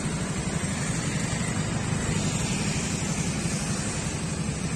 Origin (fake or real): real